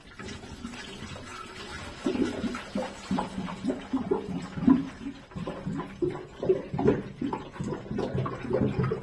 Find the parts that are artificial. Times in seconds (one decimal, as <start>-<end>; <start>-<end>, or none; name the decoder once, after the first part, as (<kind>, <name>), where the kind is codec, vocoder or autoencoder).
none